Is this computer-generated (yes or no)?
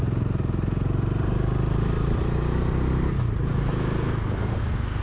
no